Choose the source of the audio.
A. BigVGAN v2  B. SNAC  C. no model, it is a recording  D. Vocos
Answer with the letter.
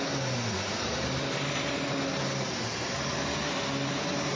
C